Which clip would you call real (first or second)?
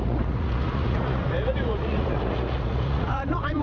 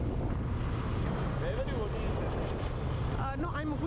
second